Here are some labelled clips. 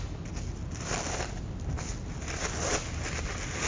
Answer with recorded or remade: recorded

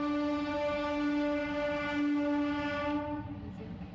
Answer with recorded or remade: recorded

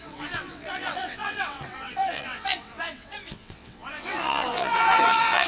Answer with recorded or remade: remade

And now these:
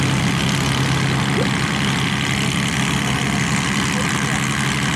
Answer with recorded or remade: recorded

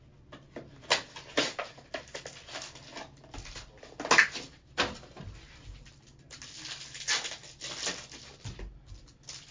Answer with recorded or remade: recorded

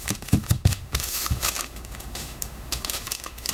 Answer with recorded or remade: remade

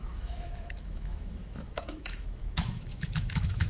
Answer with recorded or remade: remade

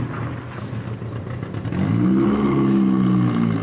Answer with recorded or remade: recorded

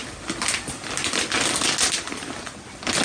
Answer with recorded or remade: recorded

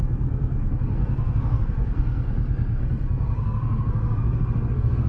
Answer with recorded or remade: remade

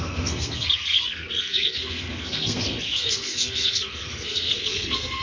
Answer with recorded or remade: remade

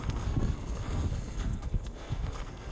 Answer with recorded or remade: remade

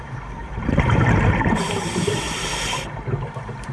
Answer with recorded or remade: remade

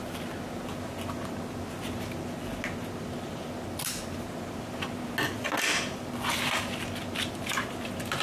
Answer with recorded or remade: recorded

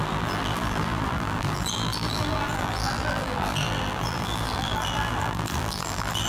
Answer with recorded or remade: remade